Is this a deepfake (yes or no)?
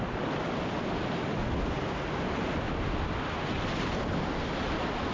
no